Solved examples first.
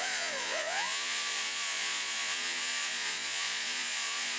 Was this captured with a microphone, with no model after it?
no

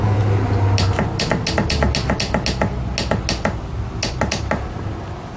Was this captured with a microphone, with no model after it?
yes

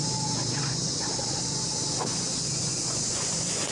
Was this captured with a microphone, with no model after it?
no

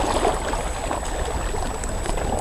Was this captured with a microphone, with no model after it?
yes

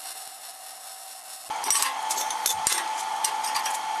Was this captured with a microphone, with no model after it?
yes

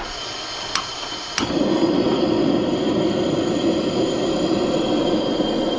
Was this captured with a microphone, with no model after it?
yes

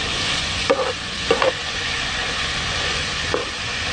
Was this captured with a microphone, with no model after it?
no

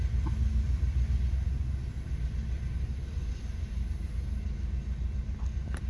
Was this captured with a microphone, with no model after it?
yes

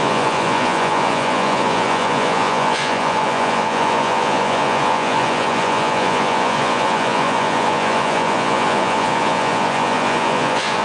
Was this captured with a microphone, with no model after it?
no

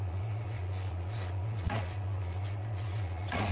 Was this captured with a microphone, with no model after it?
no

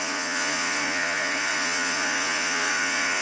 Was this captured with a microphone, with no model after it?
no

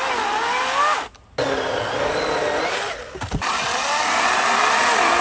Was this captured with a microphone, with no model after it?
yes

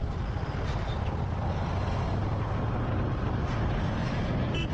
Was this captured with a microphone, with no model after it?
yes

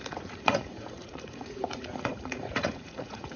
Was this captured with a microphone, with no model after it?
no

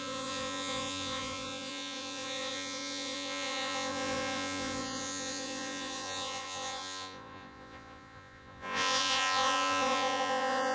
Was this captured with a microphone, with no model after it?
no